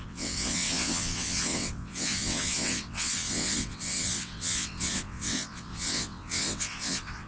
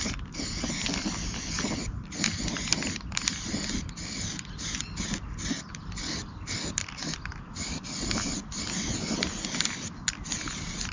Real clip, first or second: second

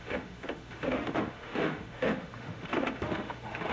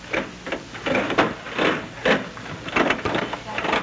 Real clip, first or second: second